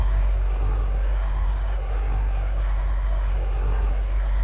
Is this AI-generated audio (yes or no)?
yes